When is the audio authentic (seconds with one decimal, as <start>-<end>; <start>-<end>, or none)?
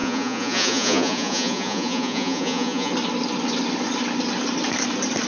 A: 2.9-5.3